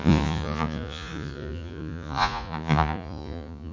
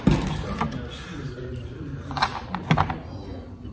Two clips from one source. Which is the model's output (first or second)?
first